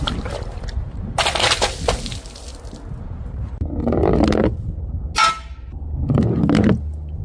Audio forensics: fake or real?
real